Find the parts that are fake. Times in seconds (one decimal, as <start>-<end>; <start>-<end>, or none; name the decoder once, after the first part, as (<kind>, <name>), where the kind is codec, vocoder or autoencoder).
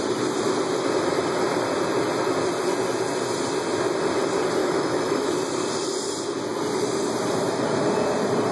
4.6-5.3 (autoencoder, DAC-VAE)